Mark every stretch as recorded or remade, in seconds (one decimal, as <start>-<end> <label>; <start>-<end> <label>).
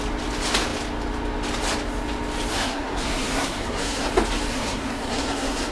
0.0-2.5 recorded; 2.5-4.1 remade; 4.1-4.5 recorded; 4.5-5.7 remade